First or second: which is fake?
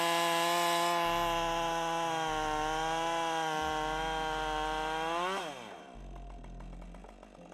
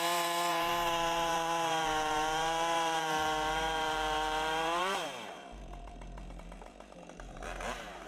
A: second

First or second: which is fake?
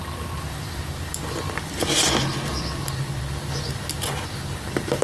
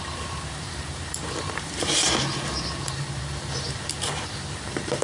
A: second